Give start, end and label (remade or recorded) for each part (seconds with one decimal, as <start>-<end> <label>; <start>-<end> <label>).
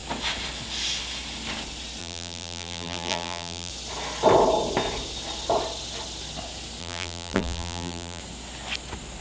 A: 0.0-2.0 recorded; 2.0-3.7 remade; 3.7-6.8 recorded; 6.8-8.2 remade; 8.2-9.2 recorded